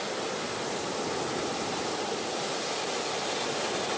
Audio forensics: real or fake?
real